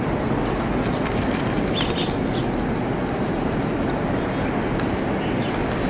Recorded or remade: recorded